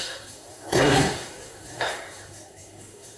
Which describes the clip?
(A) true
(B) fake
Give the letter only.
B